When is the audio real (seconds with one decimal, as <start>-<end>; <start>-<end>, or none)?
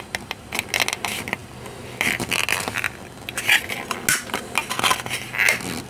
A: 0.0-5.9